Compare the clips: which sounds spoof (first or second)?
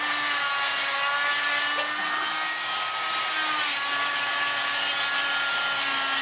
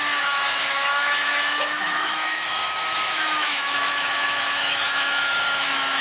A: second